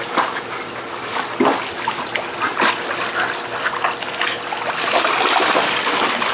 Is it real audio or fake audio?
real